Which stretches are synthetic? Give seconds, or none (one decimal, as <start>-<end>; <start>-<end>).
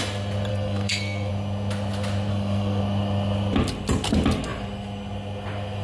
0.5-1.3; 2.3-2.8